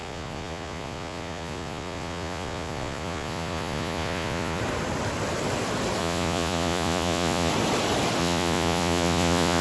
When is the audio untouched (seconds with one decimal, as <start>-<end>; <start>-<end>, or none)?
4.6-6.0; 7.5-8.2